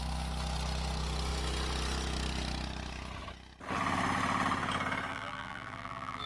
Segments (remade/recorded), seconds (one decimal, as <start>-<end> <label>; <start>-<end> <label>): 0.0-5.1 recorded; 5.1-6.3 remade